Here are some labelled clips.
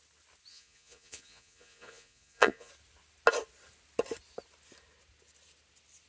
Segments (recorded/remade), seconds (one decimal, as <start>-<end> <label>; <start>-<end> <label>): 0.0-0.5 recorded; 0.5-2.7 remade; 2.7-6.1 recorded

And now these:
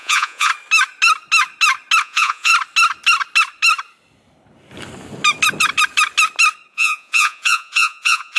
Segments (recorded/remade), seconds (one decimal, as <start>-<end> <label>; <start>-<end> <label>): 0.0-0.5 remade; 0.5-2.0 recorded; 2.0-2.5 remade; 2.5-6.7 recorded; 6.7-8.4 remade

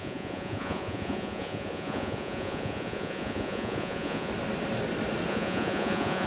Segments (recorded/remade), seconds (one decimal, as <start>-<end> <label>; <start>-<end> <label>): 0.0-4.3 remade; 4.3-5.3 recorded; 5.3-6.3 remade

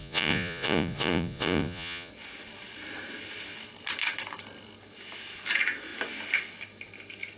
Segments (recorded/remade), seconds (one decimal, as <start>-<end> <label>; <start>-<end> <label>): 0.0-2.1 remade; 2.1-7.4 recorded